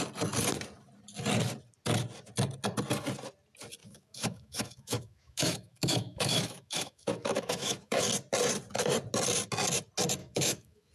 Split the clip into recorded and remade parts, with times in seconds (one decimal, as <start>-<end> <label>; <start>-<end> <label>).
0.0-3.8 recorded; 3.8-8.0 remade; 8.0-10.2 recorded; 10.2-10.9 remade